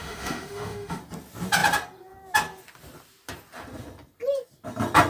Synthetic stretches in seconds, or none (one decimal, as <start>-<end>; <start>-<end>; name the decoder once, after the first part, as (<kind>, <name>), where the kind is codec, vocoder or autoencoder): 0.0-1.0 (autoencoder, DAC-VAE)